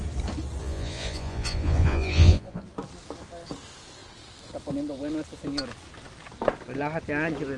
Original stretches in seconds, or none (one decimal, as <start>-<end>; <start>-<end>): 0.0-0.6; 2.6-7.6